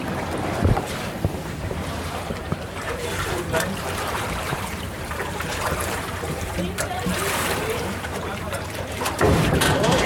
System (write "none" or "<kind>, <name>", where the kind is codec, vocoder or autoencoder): vocoder, BigVGAN v2